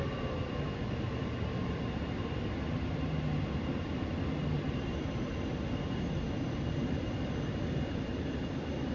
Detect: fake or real real